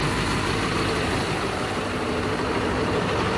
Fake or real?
real